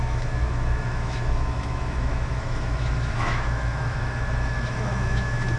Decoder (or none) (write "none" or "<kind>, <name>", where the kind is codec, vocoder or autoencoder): autoencoder, DAC-VAE